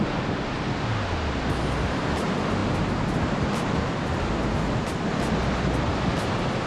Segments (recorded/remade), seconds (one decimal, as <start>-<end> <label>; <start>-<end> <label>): 0.0-6.7 recorded